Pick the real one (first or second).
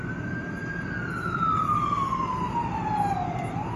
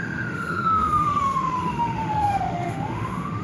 first